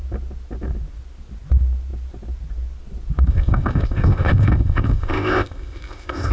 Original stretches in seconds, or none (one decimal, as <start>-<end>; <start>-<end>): 0.0-3.3